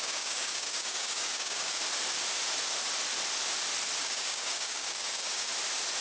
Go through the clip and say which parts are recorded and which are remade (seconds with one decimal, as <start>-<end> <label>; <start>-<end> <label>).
0.0-1.8 remade; 1.8-4.0 recorded; 4.0-5.5 remade; 5.5-6.0 recorded